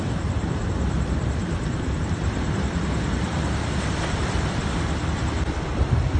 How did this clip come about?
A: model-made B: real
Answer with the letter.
A